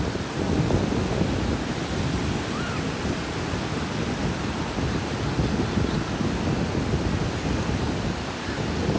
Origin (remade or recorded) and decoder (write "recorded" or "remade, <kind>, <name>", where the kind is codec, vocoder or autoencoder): recorded